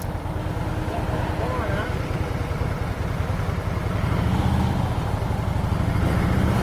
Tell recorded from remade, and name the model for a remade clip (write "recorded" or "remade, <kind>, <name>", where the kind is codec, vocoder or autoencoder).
recorded